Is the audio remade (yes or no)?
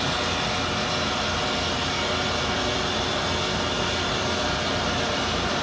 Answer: no